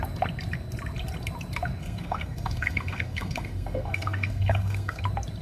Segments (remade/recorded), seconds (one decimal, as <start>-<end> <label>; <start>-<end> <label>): 0.0-1.8 recorded; 1.8-5.0 remade; 5.0-5.4 recorded